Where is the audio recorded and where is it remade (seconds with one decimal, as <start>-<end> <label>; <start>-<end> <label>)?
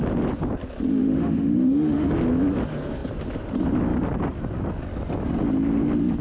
0.0-1.0 recorded; 1.0-2.1 remade; 2.1-6.2 recorded